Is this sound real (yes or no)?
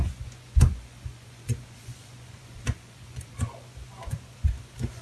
no